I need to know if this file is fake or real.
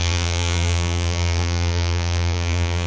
fake